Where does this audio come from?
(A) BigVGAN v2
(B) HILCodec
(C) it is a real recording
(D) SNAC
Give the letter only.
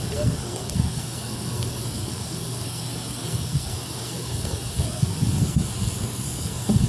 D